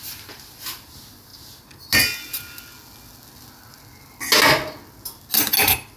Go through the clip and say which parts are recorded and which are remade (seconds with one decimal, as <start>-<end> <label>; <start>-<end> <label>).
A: 0.0-6.0 recorded